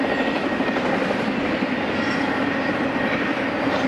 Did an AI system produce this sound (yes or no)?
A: yes